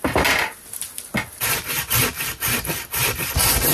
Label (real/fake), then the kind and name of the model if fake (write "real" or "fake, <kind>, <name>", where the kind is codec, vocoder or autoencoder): real